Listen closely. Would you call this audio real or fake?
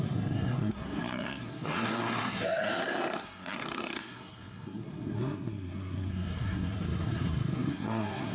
fake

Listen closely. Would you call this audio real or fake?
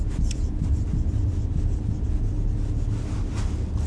real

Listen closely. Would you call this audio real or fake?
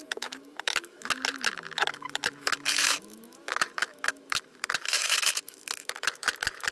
fake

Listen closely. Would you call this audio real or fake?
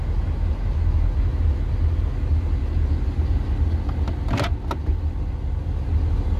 real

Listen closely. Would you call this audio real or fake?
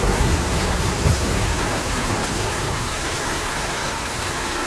fake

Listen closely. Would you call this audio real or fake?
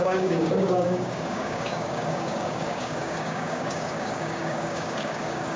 fake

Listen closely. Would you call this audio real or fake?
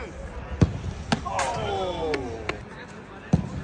real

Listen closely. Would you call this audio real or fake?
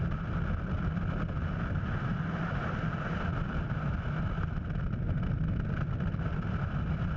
real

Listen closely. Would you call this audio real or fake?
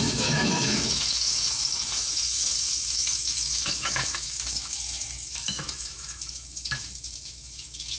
fake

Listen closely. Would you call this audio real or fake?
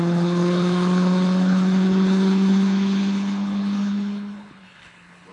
fake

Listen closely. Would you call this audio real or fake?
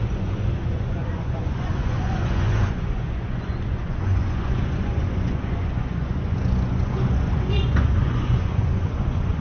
fake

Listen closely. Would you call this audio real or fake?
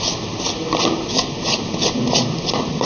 real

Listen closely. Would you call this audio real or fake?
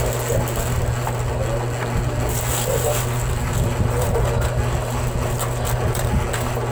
real